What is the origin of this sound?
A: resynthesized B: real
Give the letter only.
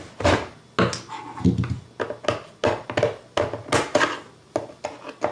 B